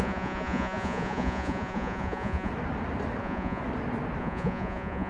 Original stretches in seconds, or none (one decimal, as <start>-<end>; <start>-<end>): 2.5-3.2; 3.6-4.2